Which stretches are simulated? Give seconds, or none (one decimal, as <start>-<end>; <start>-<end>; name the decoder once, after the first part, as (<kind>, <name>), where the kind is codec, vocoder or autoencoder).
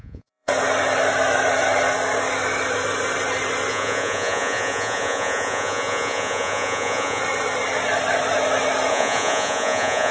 0.0-0.5 (vocoder, Vocos); 3.7-7.2; 8.9-10.1